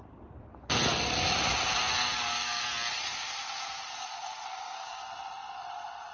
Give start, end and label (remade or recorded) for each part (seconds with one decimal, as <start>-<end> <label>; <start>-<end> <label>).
0.0-2.0 recorded; 2.0-2.6 remade; 2.6-4.5 recorded; 4.5-5.0 remade; 5.0-6.1 recorded